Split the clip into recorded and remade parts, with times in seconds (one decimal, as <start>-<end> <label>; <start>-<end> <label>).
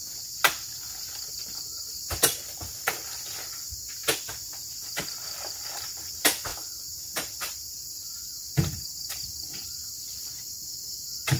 0.0-1.9 recorded; 1.9-3.6 remade; 3.6-6.5 recorded; 6.5-10.3 remade; 10.3-11.4 recorded